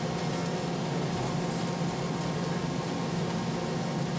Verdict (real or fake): real